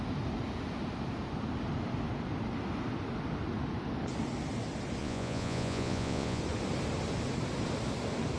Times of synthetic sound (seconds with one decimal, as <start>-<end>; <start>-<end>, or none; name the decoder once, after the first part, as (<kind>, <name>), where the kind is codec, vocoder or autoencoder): 5.0-6.4 (vocoder, Vocos)